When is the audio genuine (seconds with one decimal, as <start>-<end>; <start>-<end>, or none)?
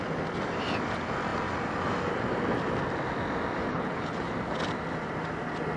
0.0-3.7; 4.3-5.8